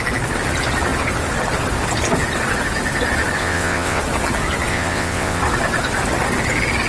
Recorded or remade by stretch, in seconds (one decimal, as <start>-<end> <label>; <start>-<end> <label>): 0.0-3.4 recorded; 3.4-4.0 remade; 4.0-4.7 recorded; 4.7-5.4 remade; 5.4-6.9 recorded